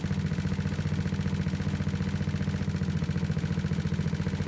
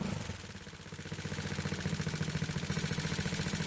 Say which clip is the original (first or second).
first